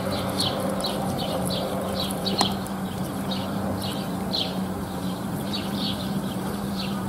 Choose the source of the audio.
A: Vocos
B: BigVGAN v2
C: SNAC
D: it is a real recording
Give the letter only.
B